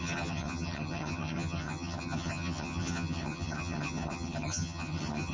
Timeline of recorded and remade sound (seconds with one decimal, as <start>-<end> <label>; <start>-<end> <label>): 0.0-5.3 remade